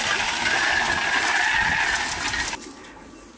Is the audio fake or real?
real